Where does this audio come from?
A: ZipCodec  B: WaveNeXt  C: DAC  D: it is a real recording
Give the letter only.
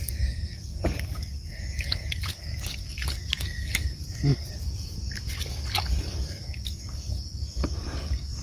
C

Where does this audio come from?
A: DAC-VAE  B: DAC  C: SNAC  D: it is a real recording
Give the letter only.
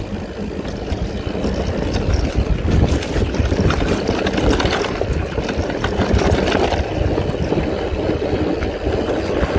D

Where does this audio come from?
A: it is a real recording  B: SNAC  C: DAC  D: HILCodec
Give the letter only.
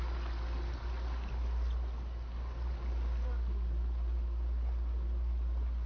A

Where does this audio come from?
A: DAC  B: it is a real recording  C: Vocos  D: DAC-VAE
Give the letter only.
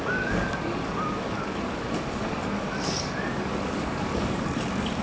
A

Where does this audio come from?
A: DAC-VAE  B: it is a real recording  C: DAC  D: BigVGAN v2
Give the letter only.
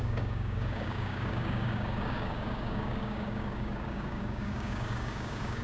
C